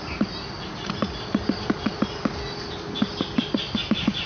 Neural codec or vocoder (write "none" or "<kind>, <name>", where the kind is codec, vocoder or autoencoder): none